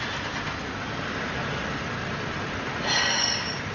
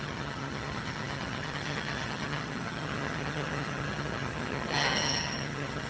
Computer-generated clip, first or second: second